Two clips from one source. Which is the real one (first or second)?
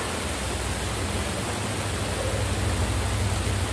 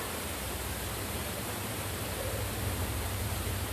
first